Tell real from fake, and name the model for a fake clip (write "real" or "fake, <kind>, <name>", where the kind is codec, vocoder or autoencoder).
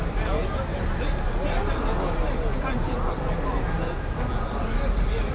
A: real